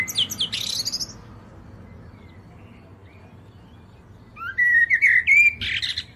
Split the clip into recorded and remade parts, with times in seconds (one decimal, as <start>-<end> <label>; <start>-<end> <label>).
0.0-6.2 recorded